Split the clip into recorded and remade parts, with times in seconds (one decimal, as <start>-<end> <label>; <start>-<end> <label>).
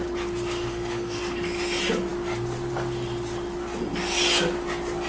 0.0-0.7 recorded; 0.7-1.2 remade; 1.2-5.1 recorded